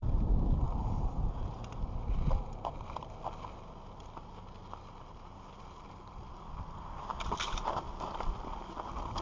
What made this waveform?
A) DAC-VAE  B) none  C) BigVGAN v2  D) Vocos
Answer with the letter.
B